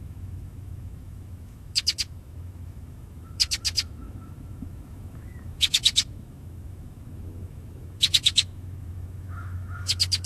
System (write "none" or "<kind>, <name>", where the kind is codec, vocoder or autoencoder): autoencoder, DAC-VAE